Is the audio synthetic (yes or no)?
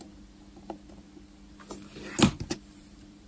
no